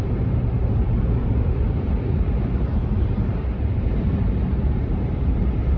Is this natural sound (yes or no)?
no